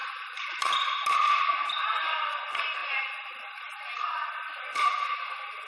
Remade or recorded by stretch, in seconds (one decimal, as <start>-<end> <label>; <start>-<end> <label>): 0.0-5.7 recorded